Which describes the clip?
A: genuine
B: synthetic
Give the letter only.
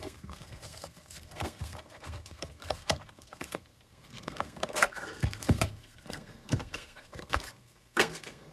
B